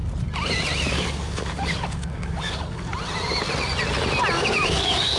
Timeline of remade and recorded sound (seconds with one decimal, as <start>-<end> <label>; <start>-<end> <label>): 0.0-0.9 recorded; 0.9-2.9 remade; 2.9-4.3 recorded; 4.3-5.2 remade

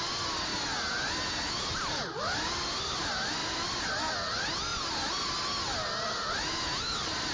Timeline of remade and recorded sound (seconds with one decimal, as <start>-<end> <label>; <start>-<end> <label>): 0.0-7.3 recorded

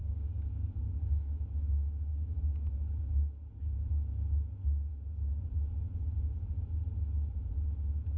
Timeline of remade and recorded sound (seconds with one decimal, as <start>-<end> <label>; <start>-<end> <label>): 0.0-1.4 remade; 1.4-2.1 recorded; 2.1-3.0 remade; 3.0-8.2 recorded

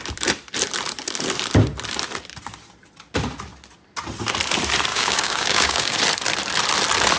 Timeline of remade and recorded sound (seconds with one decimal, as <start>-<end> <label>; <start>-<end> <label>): 0.0-4.9 recorded; 4.9-6.0 remade; 6.0-7.2 recorded

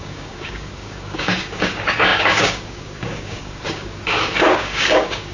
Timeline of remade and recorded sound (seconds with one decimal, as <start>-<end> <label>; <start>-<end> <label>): 0.0-5.3 remade

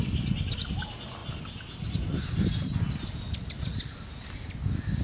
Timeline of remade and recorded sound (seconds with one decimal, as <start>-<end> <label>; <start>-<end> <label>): 0.0-5.0 recorded

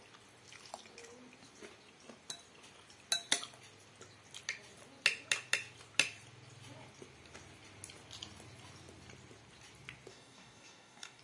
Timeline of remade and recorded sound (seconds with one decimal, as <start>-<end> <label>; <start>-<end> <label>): 0.0-10.1 recorded; 10.1-11.2 remade